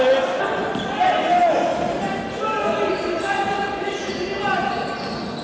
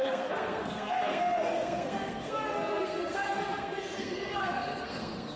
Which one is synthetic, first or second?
second